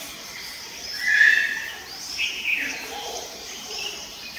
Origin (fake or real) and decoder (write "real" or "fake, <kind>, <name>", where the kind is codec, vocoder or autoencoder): fake, vocoder, BigVGAN v2